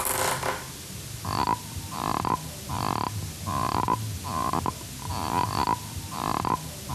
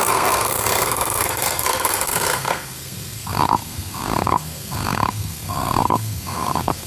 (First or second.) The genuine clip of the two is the first